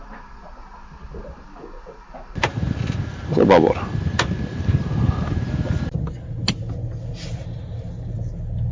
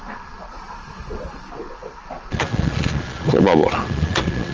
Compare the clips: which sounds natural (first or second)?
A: first